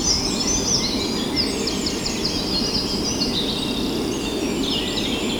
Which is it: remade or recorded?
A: recorded